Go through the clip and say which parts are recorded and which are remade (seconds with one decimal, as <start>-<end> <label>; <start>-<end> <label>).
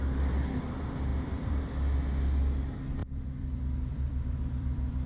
0.0-1.1 recorded; 1.1-1.6 remade; 1.6-3.0 recorded; 3.0-5.1 remade